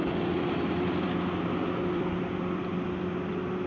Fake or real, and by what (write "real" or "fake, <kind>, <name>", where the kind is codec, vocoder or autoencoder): fake, vocoder, BigVGAN v2